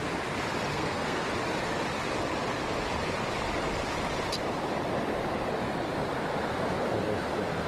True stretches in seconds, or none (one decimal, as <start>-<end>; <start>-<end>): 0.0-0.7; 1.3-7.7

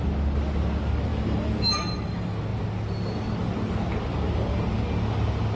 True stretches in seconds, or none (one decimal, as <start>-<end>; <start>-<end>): 0.0-5.6

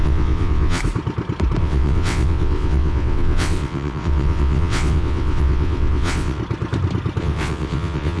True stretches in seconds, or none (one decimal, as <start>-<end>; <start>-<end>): 0.8-1.6; 6.4-7.2

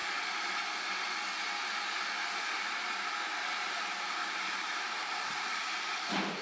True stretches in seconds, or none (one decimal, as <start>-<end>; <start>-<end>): 0.0-3.8

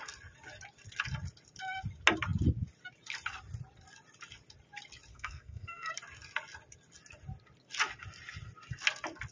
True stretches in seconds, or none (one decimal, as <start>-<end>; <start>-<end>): 0.0-5.1; 5.9-9.3

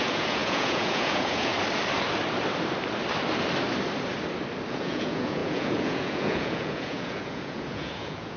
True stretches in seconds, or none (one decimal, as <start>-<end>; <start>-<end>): 1.5-4.7